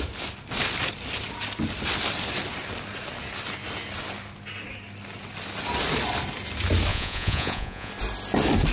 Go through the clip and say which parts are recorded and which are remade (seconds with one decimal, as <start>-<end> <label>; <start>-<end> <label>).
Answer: 0.0-6.9 recorded; 6.9-7.9 remade; 7.9-8.7 recorded